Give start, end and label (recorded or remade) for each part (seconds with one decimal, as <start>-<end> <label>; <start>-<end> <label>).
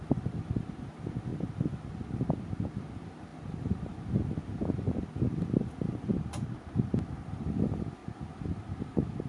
0.0-8.0 remade; 8.0-9.3 recorded